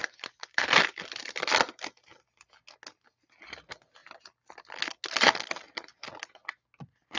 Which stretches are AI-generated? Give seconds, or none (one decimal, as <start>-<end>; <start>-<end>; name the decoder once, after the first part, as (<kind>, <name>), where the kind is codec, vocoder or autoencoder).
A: none